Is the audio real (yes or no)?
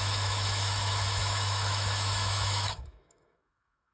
no